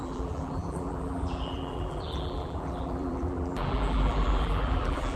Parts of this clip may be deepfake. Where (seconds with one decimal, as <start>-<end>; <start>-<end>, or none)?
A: 0.0-5.2